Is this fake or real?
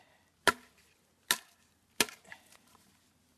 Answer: real